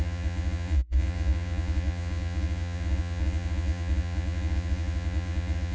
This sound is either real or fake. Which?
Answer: fake